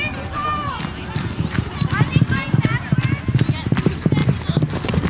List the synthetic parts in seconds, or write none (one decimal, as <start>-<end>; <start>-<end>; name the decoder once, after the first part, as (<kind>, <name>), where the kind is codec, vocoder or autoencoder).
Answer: none

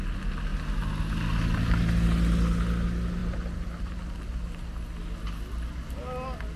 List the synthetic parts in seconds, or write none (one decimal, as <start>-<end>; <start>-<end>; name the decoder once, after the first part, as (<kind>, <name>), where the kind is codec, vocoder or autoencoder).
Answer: none

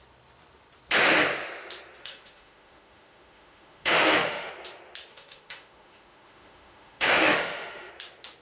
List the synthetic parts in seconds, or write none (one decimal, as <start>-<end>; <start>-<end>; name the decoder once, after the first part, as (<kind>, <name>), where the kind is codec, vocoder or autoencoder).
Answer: 2.0-4.5 (autoencoder, DAC-VAE); 5.1-7.9

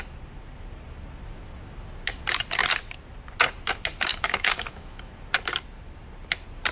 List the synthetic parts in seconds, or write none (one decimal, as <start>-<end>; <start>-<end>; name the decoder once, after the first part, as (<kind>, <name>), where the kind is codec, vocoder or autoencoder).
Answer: 4.1-5.1 (autoencoder, DAC-VAE)

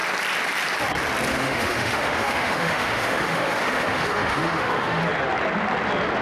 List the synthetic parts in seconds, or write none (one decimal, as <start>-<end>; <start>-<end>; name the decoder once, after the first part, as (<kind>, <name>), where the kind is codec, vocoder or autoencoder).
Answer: 1.3-5.0 (autoencoder, DAC-VAE)